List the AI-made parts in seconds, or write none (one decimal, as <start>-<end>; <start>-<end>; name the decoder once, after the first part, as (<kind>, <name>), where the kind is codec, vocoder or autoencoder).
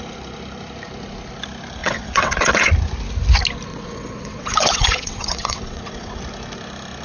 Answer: 1.8-2.7 (vocoder, WaveNeXt); 3.7-6.2